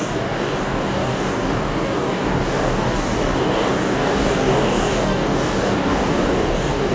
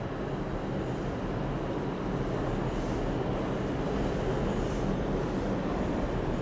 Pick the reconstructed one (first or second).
first